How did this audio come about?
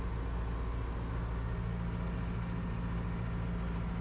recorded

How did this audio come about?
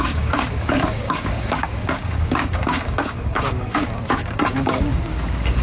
remade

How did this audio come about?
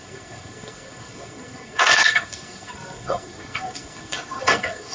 remade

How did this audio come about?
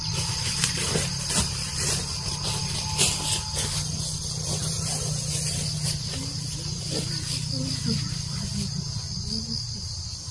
recorded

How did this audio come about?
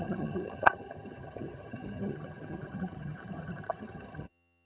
remade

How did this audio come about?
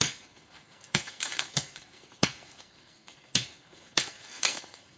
remade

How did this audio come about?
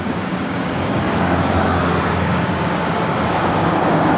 remade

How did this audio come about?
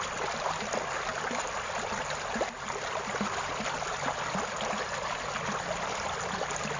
recorded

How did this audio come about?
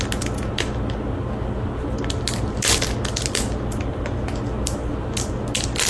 recorded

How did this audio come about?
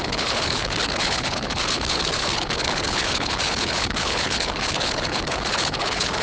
remade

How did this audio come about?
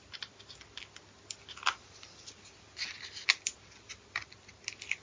recorded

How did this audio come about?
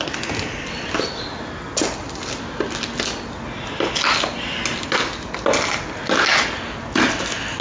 recorded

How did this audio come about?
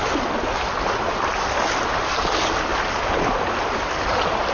recorded